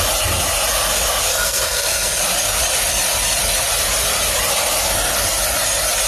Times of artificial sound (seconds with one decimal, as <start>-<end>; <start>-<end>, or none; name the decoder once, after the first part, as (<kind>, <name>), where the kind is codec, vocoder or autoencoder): 1.3-2.2 (codec, SNAC)